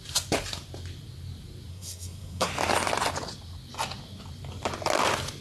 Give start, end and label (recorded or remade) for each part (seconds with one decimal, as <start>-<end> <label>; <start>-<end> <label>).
0.0-1.7 recorded; 1.7-2.5 remade; 2.5-5.4 recorded